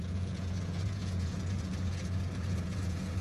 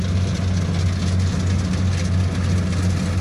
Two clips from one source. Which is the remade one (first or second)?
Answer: first